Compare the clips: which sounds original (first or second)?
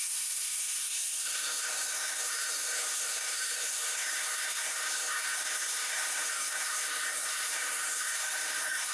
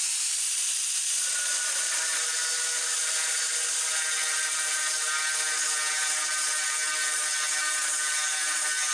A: second